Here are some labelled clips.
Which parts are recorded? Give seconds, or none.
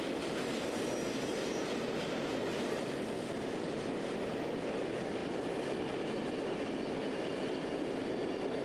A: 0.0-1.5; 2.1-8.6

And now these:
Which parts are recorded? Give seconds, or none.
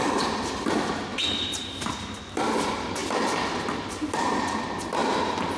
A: 0.0-1.1; 2.2-5.0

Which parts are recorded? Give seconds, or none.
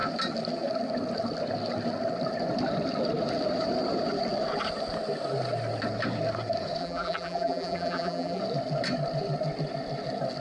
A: 0.0-6.8; 8.4-10.4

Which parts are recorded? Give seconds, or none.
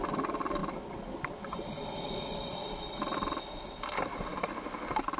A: 0.6-3.7; 4.3-5.2